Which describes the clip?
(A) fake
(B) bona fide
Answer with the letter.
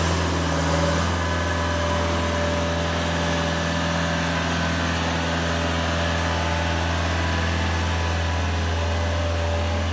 B